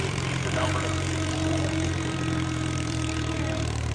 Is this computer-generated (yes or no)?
yes